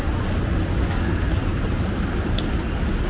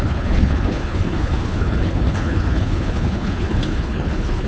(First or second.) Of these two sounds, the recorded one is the first